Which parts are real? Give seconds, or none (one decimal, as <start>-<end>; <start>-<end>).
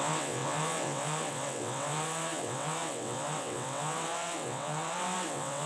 none